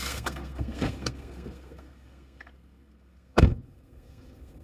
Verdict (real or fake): fake